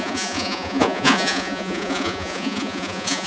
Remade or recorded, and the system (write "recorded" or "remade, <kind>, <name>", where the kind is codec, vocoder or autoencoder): remade, vocoder, Vocos